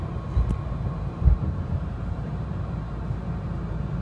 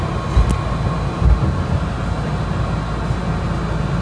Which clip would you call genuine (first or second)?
second